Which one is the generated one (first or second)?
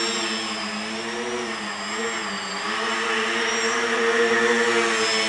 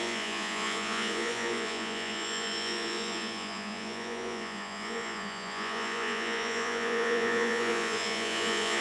second